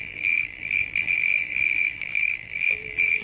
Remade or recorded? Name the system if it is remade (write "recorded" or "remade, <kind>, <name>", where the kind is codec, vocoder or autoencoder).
remade, vocoder, BigVGAN v2